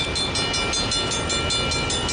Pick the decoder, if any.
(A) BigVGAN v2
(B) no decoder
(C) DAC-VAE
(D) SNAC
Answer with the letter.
B